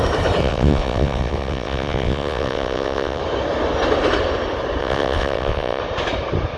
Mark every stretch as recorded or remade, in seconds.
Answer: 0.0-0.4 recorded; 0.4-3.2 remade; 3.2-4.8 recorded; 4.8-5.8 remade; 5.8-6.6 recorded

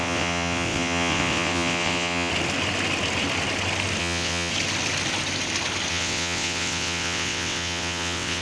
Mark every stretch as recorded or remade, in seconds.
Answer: 0.0-2.3 remade; 2.3-4.0 recorded; 4.0-4.5 remade; 4.5-5.9 recorded; 5.9-8.4 remade

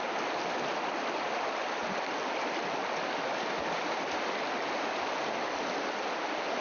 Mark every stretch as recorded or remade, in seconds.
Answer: 0.0-6.6 recorded

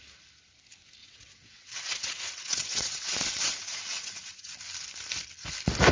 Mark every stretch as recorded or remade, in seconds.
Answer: 0.0-1.0 recorded; 1.0-4.5 remade; 4.5-5.9 recorded

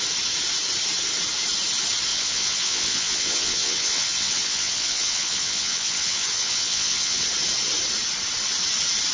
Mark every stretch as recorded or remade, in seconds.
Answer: 0.0-2.1 recorded; 2.1-7.3 remade; 7.3-9.1 recorded

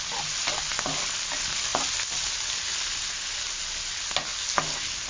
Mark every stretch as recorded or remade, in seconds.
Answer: 0.0-5.1 recorded

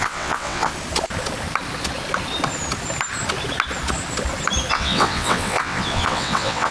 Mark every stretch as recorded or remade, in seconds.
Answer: 0.0-0.7 remade; 0.7-4.7 recorded; 4.7-6.7 remade

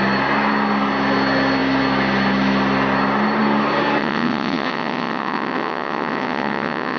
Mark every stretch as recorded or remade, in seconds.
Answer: 0.0-4.0 recorded; 4.0-7.0 remade